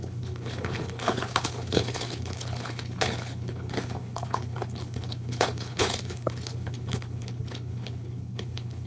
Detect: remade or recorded remade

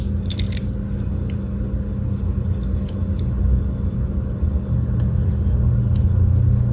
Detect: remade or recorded recorded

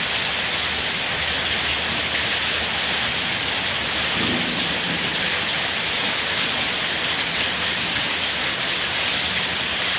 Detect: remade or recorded recorded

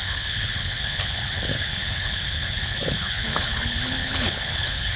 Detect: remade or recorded remade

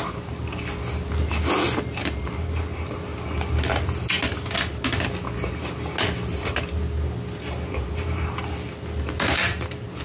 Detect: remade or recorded recorded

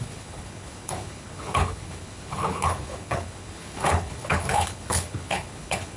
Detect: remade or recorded remade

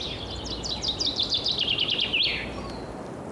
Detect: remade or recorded recorded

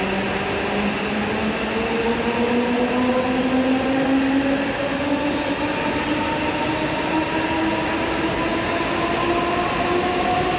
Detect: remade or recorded recorded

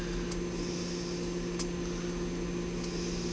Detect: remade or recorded recorded